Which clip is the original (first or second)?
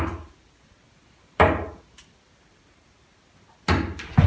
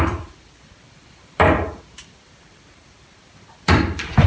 first